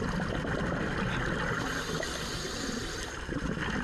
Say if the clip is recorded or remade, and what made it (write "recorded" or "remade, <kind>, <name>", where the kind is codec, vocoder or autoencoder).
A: recorded